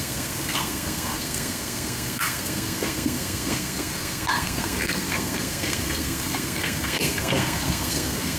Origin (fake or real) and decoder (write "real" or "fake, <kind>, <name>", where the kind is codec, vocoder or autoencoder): fake, codec, SNAC